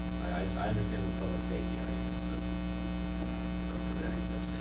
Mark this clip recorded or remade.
recorded